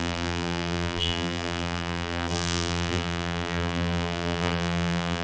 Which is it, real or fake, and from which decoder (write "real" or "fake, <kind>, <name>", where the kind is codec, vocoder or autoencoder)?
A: fake, vocoder, BigVGAN v2